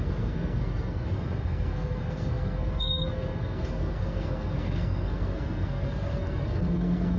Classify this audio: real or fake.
fake